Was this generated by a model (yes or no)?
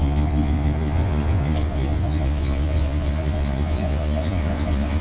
yes